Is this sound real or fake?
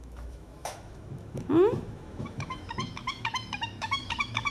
fake